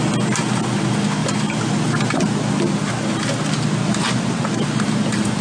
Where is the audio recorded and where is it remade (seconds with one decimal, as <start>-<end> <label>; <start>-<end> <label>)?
0.0-5.4 recorded